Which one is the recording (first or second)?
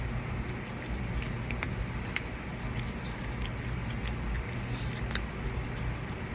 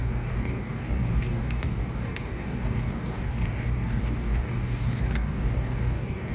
first